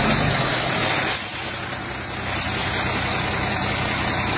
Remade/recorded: recorded